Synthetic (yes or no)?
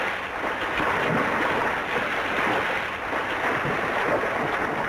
no